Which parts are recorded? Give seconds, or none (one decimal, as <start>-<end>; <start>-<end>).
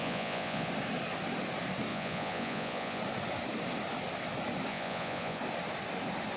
0.7-1.9; 3.0-4.7; 5.4-6.4